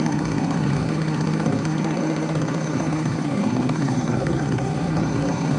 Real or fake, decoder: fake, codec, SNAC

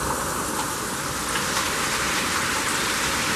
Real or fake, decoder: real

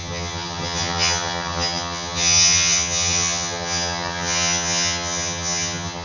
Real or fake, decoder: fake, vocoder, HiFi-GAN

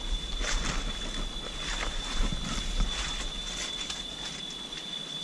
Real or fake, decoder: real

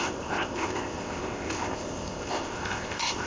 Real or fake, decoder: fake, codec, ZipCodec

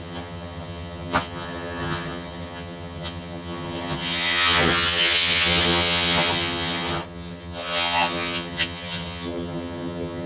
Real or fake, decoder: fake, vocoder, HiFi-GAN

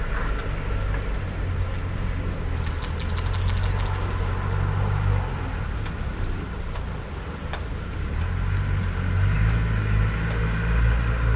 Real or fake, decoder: real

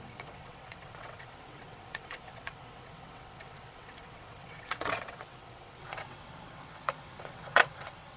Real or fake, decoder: fake, vocoder, WaveNeXt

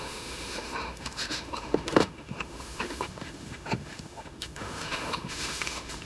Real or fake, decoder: fake, autoencoder, DAC-VAE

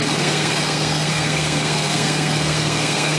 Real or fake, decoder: fake, codec, SNAC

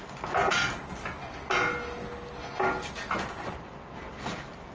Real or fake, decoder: real